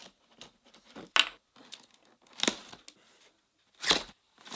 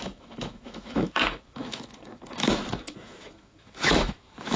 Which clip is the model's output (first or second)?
second